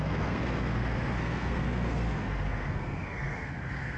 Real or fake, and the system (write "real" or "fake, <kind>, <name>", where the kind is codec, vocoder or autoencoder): fake, codec, SNAC